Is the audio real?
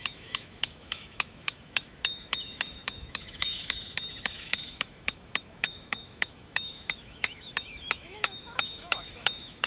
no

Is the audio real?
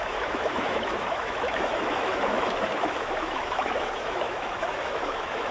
no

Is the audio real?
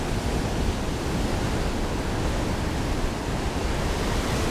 yes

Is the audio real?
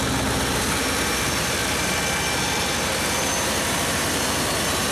yes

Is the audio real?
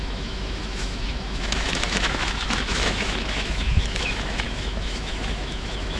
no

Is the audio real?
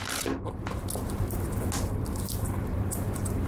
yes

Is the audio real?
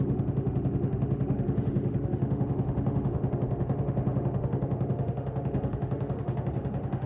no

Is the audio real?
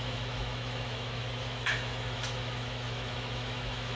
no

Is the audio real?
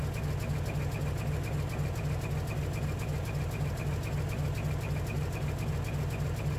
yes